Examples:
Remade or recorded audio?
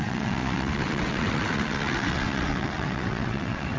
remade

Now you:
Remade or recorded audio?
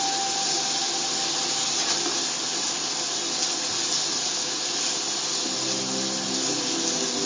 recorded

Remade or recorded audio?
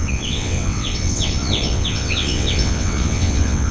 remade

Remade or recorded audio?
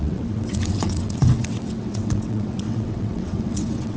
remade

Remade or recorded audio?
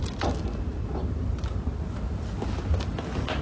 recorded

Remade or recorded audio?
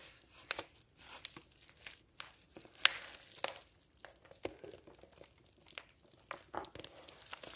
recorded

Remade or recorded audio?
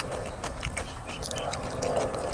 recorded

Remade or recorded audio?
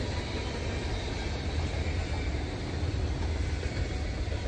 recorded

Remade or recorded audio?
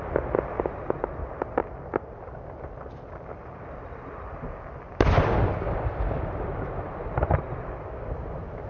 recorded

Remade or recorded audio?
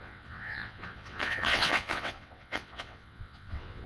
remade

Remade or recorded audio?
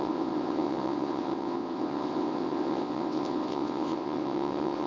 remade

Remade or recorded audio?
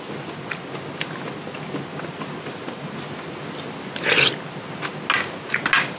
recorded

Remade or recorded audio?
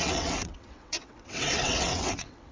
remade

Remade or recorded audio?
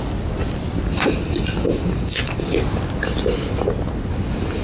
recorded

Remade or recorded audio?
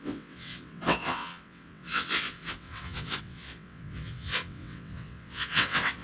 remade